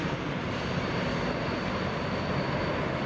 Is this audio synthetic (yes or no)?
no